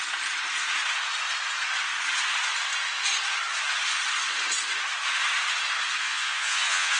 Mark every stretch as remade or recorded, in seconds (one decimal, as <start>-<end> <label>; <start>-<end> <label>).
0.0-6.0 recorded; 6.0-7.0 remade

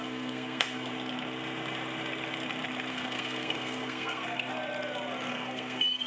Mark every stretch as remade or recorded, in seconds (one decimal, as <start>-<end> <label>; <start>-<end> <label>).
0.0-0.9 remade; 0.9-2.9 recorded; 2.9-4.5 remade; 4.5-5.3 recorded; 5.3-6.1 remade

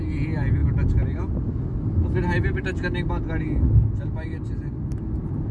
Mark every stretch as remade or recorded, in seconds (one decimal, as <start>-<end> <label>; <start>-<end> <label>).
0.0-5.5 recorded

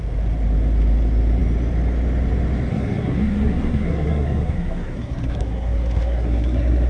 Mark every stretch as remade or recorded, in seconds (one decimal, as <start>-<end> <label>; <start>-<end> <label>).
0.0-2.7 recorded; 2.7-6.9 remade

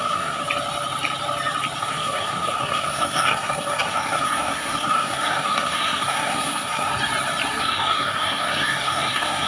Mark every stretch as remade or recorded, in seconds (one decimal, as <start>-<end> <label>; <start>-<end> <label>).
0.0-0.4 remade; 0.4-1.8 recorded; 1.8-6.9 remade; 6.9-7.6 recorded; 7.6-9.5 remade

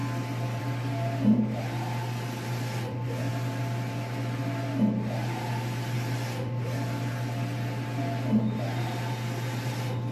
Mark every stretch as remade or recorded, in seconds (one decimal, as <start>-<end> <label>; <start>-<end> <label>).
0.0-10.1 recorded

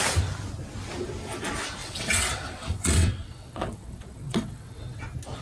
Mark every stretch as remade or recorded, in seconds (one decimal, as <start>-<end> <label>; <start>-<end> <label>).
0.0-1.8 recorded; 1.8-5.0 remade; 5.0-5.4 recorded

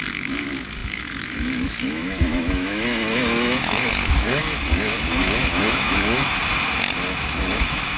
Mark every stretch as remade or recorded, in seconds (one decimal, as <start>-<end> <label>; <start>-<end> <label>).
0.0-6.4 remade; 6.4-7.4 recorded; 7.4-8.0 remade